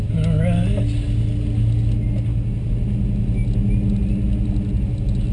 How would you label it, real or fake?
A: real